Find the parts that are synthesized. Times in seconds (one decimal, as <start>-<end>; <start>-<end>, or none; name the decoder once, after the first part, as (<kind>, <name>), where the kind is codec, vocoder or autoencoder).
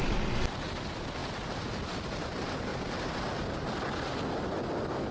none